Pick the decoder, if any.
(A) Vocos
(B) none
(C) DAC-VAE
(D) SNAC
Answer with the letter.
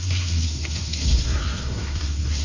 D